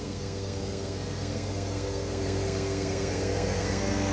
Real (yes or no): no